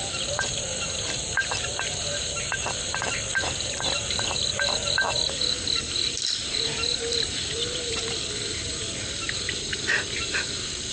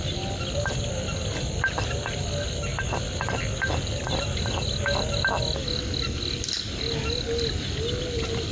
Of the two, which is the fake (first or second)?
first